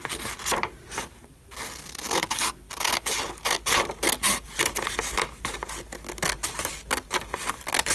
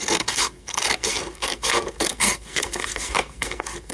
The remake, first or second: second